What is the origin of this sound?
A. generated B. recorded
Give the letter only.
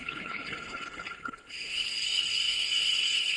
A